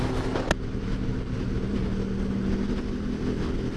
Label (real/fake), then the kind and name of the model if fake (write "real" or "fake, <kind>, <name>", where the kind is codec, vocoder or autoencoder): real